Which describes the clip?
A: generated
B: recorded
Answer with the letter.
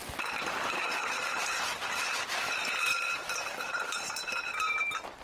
B